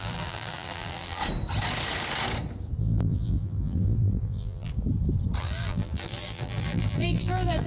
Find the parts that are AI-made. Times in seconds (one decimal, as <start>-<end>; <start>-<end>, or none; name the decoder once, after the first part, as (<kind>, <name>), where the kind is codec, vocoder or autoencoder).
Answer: 0.0-1.2 (vocoder, BigVGAN v2); 2.8-4.7; 5.4-7.7